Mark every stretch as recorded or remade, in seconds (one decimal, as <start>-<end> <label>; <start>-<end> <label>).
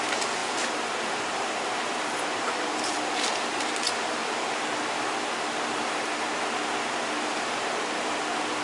0.0-4.2 remade; 4.2-7.3 recorded; 7.3-8.6 remade